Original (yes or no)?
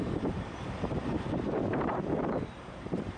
no